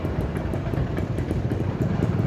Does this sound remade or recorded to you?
remade